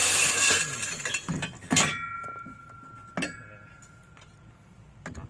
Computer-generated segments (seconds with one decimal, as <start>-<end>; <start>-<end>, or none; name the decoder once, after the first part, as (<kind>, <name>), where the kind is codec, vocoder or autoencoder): 0.0-0.6 (codec, SNAC)

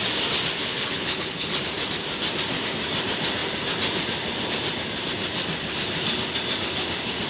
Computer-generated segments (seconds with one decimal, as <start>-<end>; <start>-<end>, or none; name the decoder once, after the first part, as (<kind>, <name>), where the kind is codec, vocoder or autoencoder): 0.6-1.6 (codec, HILCodec)